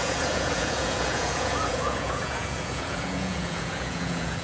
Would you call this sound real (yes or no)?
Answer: no